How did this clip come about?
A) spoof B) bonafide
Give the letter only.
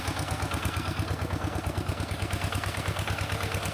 A